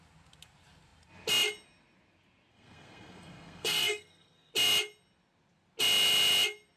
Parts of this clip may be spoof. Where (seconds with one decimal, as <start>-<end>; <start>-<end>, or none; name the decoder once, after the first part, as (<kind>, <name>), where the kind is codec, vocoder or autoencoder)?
2.5-4.5 (codec, SNAC)